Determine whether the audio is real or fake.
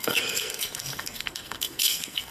fake